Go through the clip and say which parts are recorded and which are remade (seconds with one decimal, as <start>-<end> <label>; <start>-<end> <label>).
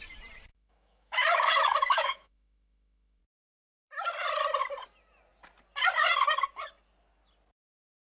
0.0-0.5 recorded; 0.5-3.2 remade; 3.2-8.1 recorded